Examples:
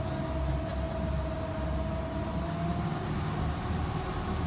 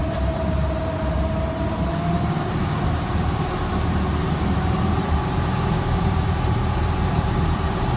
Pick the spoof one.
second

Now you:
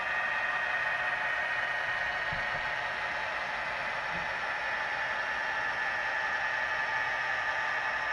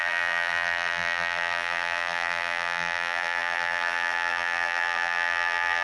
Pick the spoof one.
second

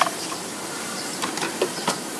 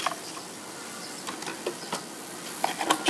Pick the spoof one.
first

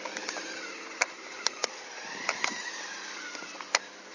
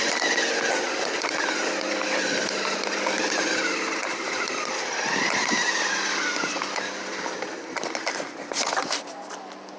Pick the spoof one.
second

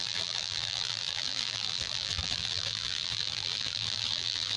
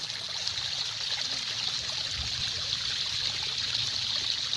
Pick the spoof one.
first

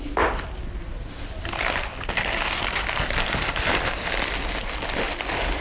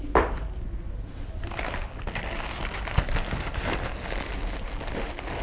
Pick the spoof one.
first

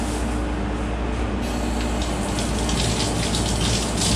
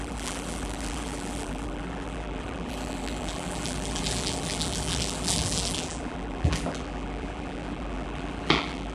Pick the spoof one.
second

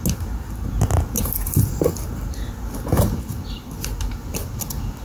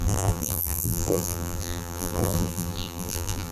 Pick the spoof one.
second